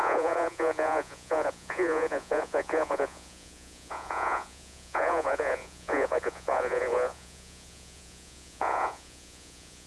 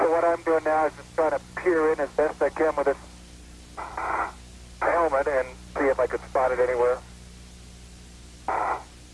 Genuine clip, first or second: second